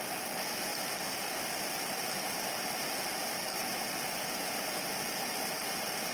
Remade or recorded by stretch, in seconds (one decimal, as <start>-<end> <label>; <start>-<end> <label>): 0.0-6.1 recorded